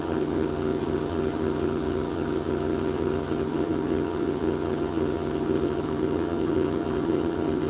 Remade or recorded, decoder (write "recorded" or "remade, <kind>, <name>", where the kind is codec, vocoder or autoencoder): remade, vocoder, HiFi-GAN